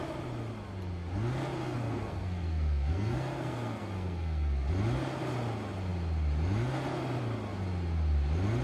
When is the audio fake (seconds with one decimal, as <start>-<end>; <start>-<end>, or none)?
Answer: 1.6-4.7